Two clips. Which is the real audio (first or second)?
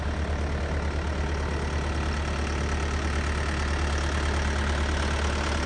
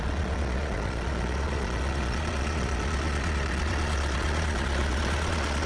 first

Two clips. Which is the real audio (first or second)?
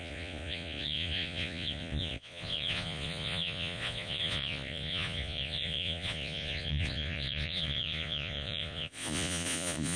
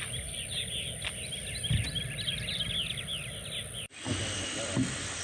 second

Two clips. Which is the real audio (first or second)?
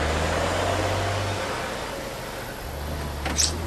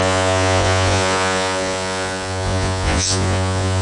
first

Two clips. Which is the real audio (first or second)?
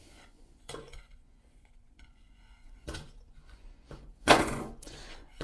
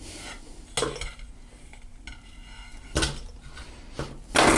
second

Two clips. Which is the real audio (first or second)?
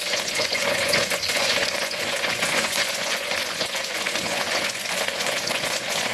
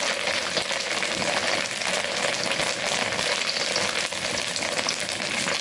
second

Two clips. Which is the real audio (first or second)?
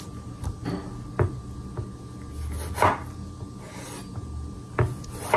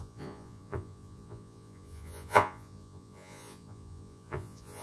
first